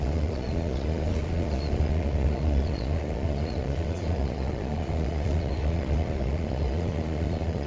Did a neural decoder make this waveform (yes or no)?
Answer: yes